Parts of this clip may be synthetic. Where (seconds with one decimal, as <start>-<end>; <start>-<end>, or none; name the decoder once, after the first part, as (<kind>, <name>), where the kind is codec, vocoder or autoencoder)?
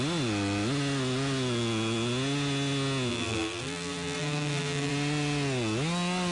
3.1-4.9 (vocoder, BigVGAN v2)